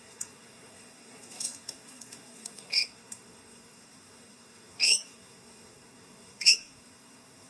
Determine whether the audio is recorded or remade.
remade